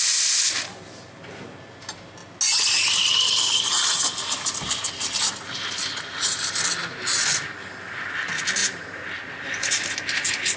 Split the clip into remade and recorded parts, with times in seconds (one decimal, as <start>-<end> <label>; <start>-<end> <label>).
0.0-10.6 recorded